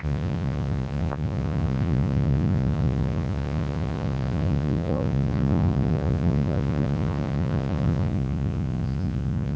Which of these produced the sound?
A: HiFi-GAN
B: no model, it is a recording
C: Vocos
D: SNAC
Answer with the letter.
C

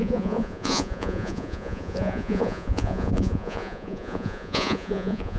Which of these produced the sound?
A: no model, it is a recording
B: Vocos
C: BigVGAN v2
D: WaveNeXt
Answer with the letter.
B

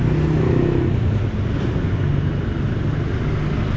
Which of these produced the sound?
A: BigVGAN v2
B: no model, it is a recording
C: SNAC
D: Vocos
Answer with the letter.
B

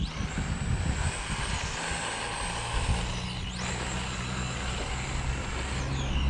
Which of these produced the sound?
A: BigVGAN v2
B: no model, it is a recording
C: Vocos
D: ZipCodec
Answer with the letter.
B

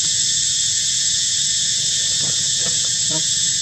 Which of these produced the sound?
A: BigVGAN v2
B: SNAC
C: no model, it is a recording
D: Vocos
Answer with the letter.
D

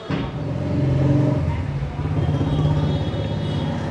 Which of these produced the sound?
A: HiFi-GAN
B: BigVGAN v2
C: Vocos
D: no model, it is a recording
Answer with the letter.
D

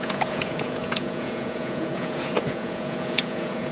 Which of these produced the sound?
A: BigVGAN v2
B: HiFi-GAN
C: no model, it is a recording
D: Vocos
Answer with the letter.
D